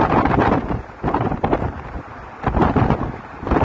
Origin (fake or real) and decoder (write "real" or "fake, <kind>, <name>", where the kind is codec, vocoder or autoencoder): real